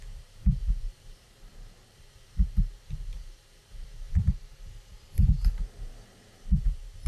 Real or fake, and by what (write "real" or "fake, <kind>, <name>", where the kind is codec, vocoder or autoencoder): fake, vocoder, BigVGAN v2